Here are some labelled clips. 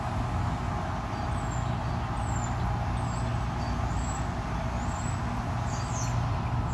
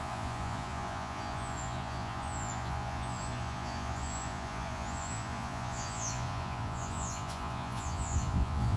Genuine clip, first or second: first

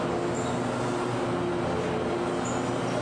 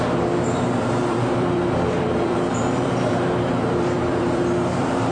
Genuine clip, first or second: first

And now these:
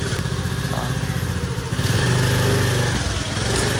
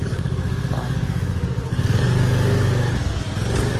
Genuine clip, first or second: first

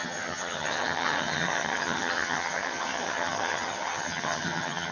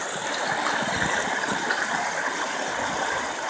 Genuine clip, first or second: second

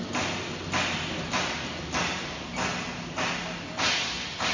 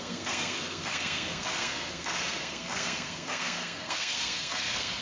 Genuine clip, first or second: first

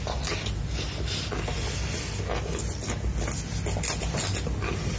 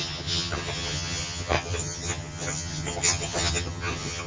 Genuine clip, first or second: first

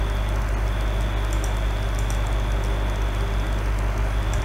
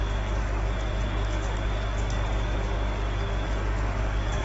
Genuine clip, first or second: first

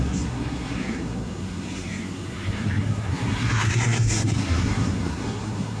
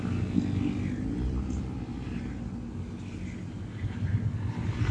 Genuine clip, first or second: second